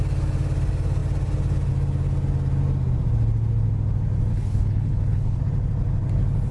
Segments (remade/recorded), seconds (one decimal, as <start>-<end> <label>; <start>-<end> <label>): 0.0-4.3 recorded; 4.3-5.4 remade; 5.4-6.5 recorded